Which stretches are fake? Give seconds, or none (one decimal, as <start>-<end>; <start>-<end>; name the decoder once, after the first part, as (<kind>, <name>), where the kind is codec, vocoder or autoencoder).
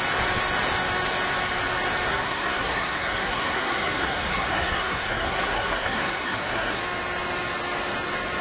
2.1-6.8 (codec, SNAC)